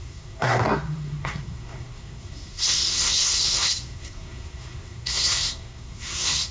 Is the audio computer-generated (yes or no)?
yes